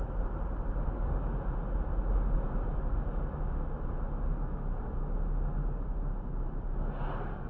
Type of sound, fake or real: real